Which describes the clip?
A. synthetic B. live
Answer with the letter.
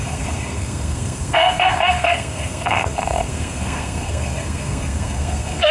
A